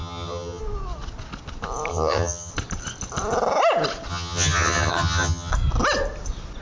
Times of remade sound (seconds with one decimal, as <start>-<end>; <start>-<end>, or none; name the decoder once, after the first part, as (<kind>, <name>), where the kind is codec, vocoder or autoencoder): 0.0-0.6 (vocoder, HiFi-GAN); 1.9-2.5; 4.1-5.5